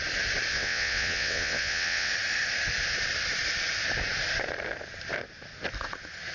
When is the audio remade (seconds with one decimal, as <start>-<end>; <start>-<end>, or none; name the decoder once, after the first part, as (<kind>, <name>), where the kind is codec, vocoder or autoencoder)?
0.5-2.1 (vocoder, WaveNeXt)